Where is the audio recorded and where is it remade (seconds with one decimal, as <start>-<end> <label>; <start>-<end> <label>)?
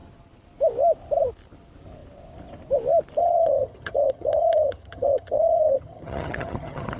0.0-3.2 recorded; 3.2-7.0 remade